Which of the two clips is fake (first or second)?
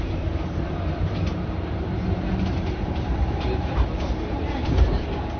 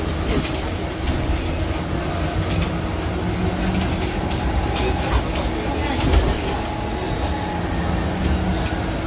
first